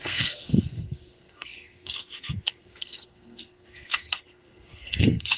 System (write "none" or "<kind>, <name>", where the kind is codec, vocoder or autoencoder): codec, SNAC